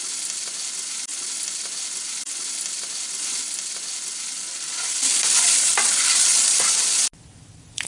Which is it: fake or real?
real